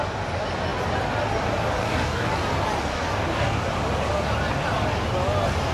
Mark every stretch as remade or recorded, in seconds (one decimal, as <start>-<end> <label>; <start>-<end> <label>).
0.0-1.8 recorded; 1.8-2.3 remade; 2.3-2.9 recorded; 2.9-3.6 remade; 3.6-5.7 recorded